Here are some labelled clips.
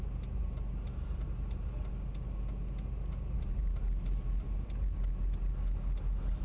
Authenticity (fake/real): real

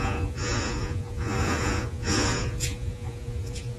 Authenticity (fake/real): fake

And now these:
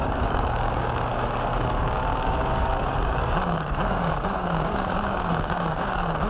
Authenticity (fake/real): fake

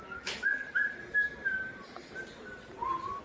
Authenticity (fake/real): real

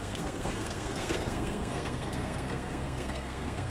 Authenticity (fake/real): fake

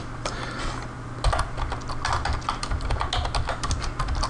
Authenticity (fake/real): real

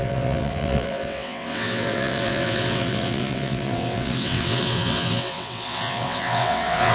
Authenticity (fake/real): fake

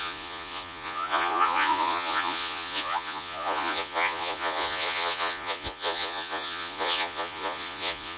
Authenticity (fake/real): fake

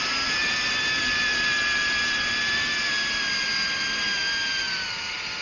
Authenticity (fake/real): real